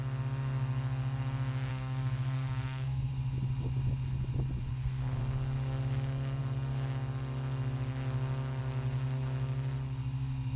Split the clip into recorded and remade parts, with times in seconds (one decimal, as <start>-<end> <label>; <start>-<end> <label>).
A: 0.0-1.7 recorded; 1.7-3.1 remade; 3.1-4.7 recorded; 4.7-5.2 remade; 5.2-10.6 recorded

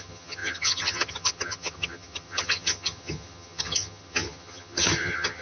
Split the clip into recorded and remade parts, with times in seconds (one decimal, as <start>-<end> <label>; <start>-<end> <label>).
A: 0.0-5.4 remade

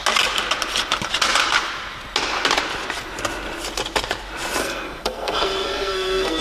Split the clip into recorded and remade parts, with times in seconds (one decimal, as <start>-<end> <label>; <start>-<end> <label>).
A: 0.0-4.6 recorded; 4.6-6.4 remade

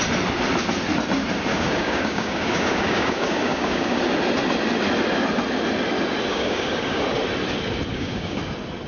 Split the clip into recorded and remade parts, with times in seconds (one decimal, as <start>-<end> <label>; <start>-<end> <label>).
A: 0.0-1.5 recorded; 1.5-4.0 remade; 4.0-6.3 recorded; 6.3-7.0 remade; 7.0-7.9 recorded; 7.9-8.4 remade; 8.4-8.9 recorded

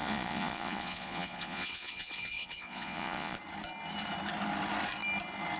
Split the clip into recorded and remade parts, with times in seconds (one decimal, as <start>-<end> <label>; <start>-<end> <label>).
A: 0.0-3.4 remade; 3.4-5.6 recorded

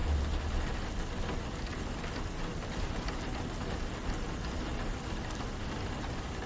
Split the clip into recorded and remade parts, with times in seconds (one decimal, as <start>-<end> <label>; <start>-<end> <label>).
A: 0.0-6.5 recorded